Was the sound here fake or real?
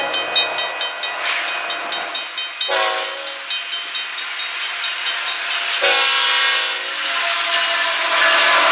real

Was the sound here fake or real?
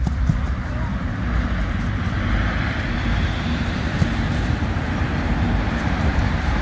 fake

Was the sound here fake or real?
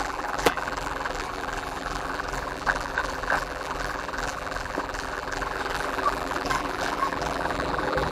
fake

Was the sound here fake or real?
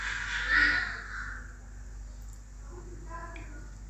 real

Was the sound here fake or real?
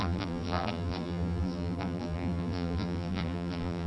fake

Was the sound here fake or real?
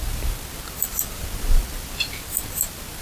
real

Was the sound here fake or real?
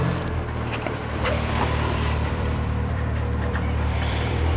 fake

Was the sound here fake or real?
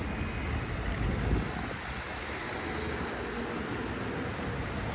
real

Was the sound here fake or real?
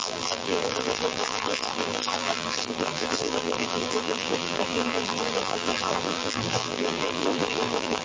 fake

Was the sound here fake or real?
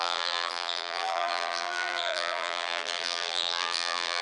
fake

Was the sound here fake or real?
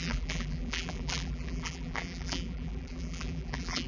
fake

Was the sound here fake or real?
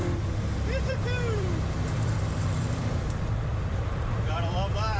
fake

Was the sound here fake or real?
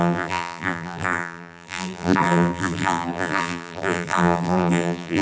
fake